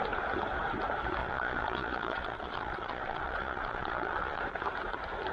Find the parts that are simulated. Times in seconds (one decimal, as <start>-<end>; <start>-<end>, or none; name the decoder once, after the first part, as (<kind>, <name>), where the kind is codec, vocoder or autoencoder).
1.2-4.4 (vocoder, Vocos)